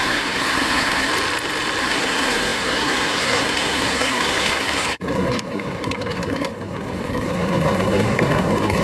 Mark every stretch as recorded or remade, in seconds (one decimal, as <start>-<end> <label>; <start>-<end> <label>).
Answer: 0.0-1.1 remade; 1.1-1.8 recorded; 1.8-8.8 remade